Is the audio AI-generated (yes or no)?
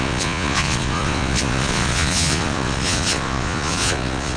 yes